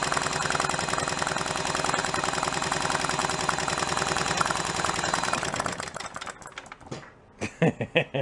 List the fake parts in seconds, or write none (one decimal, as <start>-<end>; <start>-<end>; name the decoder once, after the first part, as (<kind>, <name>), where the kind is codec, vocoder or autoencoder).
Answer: 2.0-2.8 (vocoder, BigVGAN v2); 3.2-6.2